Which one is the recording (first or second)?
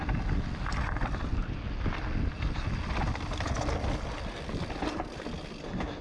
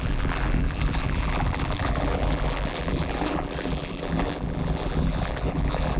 first